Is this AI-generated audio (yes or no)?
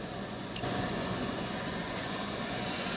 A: yes